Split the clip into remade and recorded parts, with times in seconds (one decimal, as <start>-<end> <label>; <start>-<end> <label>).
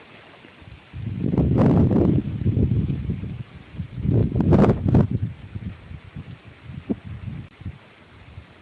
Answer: 0.0-4.2 remade; 4.2-7.4 recorded; 7.4-8.6 remade